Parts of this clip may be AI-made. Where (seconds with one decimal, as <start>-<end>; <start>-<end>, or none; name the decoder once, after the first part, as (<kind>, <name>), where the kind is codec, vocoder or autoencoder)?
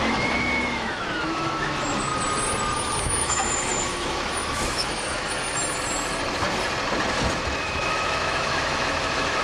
0.0-2.1 (autoencoder, DAC-VAE); 3.0-5.4; 7.6-9.4